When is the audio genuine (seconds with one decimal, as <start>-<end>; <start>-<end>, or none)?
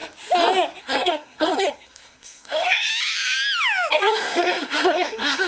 0.0-0.8; 2.9-3.9